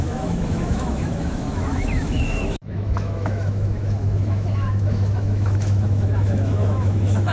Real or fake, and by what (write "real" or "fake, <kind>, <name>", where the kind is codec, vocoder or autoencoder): fake, autoencoder, DAC-VAE